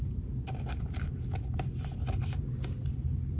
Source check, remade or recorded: recorded